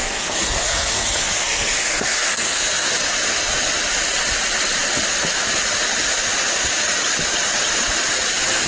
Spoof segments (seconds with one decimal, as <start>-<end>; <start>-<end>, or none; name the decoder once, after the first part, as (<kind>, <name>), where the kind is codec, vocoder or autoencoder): 0.0-2.9 (codec, SNAC)